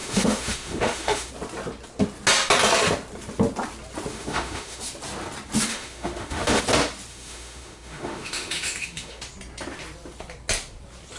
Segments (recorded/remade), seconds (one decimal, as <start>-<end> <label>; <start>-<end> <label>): 0.0-1.3 remade; 1.3-4.1 recorded; 4.1-4.8 remade; 4.8-5.7 recorded; 5.7-6.6 remade; 6.6-7.1 recorded; 7.1-9.2 remade; 9.2-11.2 recorded